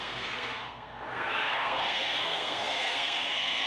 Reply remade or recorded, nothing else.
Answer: remade